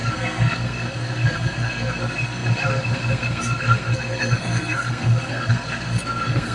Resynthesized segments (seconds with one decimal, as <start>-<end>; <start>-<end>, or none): 0.0-6.5